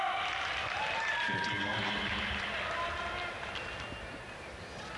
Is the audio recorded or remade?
recorded